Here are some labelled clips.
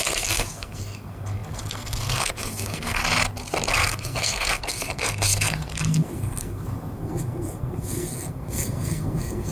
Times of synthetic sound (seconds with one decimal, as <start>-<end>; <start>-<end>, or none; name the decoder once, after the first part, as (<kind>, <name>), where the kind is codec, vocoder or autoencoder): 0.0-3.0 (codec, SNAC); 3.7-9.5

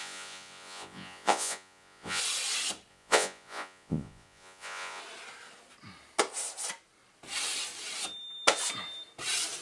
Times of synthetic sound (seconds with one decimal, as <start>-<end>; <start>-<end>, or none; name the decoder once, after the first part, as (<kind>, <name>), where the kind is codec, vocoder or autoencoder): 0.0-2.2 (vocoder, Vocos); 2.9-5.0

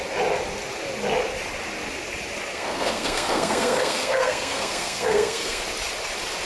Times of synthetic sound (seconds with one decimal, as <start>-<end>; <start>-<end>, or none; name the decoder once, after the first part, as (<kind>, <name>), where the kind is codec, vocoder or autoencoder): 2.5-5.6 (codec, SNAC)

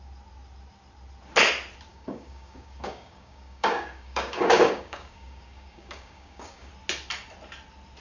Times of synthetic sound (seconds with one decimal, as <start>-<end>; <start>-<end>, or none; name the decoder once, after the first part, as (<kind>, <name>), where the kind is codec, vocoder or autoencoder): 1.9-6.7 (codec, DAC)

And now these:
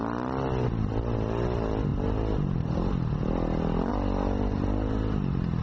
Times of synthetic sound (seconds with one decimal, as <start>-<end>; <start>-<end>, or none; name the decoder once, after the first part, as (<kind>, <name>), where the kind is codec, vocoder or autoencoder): none

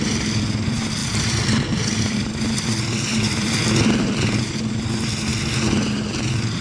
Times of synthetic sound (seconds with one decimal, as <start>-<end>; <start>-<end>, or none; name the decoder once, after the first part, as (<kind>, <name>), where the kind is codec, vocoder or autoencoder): 1.0-2.1 (vocoder, BigVGAN v2); 3.1-4.4

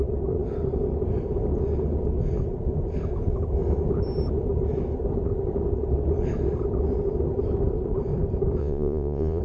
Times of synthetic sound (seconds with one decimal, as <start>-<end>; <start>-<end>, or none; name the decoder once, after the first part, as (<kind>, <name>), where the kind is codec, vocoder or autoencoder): 8.6-9.4 (vocoder, Vocos)

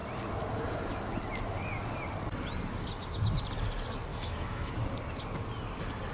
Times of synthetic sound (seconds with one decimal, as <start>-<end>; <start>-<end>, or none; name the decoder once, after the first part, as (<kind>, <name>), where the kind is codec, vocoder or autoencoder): 4.1-4.7 (autoencoder, DAC-VAE)